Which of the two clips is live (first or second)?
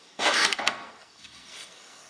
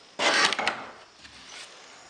second